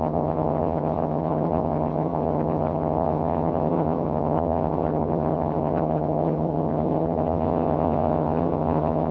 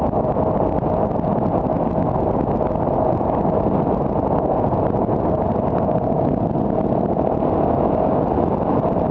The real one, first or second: second